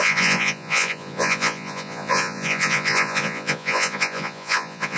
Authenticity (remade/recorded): remade